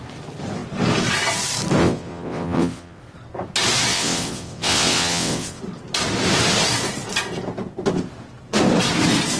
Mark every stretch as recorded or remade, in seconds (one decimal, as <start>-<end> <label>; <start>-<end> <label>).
0.0-1.8 recorded; 1.8-3.0 remade; 3.0-3.9 recorded; 3.9-5.6 remade; 5.6-9.4 recorded